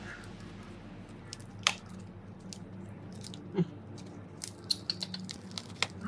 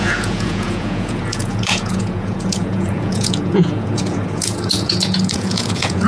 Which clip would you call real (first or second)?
first